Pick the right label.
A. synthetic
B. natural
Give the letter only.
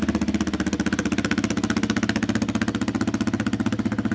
B